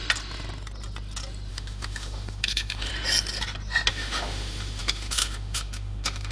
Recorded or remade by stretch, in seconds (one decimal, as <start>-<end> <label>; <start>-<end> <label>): 0.0-1.5 recorded; 1.5-2.9 remade; 2.9-3.9 recorded; 3.9-6.3 remade